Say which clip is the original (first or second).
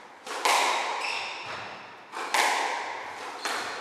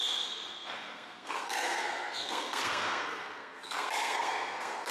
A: first